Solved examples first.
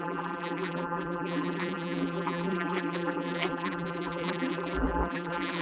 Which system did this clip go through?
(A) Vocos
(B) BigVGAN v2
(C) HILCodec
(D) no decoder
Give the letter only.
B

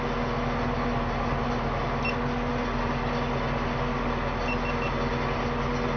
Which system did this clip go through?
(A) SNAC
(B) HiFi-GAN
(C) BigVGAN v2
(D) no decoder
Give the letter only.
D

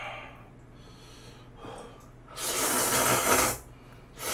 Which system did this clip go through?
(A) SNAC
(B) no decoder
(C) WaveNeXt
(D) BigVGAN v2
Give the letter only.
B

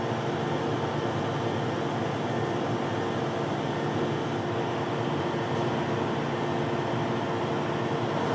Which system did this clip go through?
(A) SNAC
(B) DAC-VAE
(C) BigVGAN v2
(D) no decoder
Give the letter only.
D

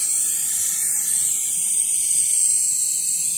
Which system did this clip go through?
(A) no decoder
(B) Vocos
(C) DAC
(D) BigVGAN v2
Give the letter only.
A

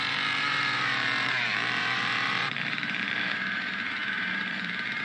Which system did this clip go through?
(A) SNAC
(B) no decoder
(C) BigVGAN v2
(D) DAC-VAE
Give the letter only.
C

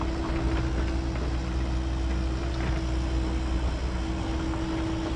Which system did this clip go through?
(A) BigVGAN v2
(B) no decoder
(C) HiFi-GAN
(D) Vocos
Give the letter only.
B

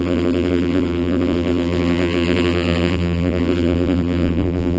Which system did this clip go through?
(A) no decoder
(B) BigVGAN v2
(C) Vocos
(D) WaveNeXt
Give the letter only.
B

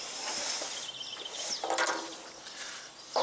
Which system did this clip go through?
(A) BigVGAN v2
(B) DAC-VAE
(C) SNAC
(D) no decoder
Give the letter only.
A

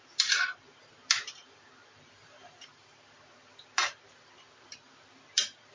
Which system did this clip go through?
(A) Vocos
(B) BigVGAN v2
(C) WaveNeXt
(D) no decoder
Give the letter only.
B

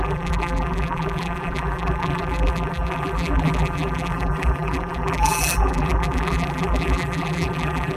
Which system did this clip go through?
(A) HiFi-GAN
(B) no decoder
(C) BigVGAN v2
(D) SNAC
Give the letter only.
C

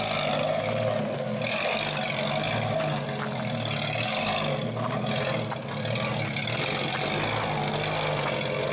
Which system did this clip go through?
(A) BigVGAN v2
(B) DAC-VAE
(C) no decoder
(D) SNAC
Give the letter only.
C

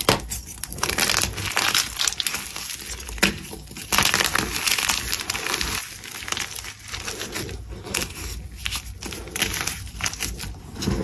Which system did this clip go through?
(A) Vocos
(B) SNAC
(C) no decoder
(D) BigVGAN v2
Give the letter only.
C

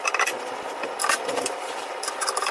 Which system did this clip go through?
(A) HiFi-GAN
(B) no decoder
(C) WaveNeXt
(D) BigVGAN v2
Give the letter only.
D